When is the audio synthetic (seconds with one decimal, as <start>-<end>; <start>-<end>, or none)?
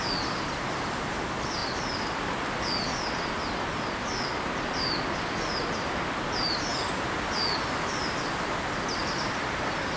none